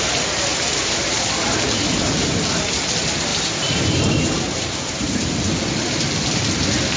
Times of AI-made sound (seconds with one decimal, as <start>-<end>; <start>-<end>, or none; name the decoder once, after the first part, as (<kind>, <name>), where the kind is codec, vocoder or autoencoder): 0.5-2.3 (vocoder, BigVGAN v2); 3.3-5.3